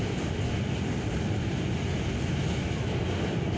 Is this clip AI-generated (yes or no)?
no